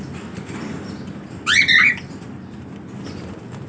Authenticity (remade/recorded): recorded